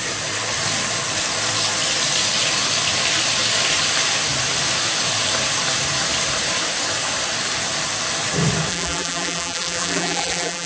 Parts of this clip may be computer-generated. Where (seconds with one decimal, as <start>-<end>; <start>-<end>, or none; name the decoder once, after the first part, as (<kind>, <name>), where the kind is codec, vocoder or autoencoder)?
8.7-10.7 (vocoder, BigVGAN v2)